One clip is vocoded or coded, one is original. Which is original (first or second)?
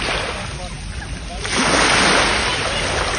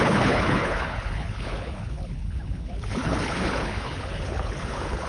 first